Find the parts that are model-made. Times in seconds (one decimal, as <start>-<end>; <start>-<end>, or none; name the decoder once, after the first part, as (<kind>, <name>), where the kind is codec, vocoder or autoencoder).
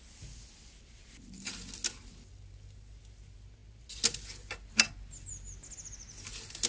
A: none